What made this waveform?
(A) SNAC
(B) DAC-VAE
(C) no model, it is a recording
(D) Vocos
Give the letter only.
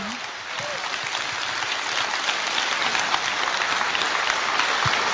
C